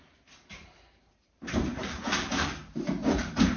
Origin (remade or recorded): remade